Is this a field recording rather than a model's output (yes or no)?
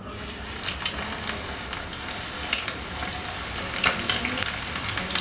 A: yes